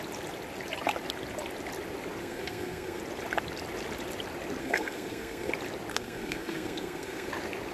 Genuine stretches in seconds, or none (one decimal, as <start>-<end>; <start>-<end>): 0.0-2.2; 3.0-4.6; 5.5-5.9; 7.3-7.7